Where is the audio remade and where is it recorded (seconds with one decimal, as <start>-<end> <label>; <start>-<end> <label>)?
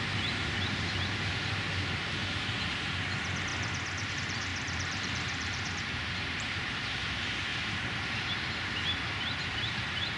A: 0.0-3.5 remade; 3.5-4.1 recorded; 4.1-7.5 remade; 7.5-9.5 recorded; 9.5-10.2 remade